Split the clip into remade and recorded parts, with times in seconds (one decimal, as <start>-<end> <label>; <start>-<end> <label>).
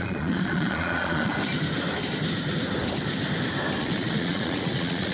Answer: 0.0-1.3 remade; 1.3-3.8 recorded; 3.8-5.1 remade